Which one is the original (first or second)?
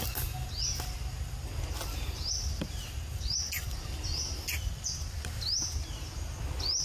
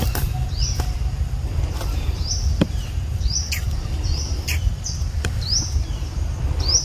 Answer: first